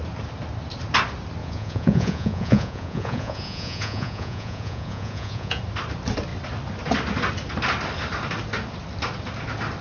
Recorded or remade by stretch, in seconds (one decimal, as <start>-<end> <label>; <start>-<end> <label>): 0.0-1.4 recorded; 1.4-5.6 remade; 5.6-9.8 recorded